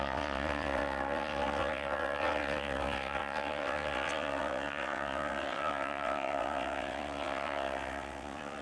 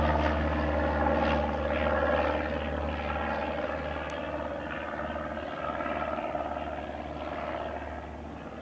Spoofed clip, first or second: first